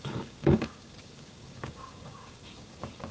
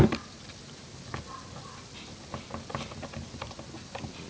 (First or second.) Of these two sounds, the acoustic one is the second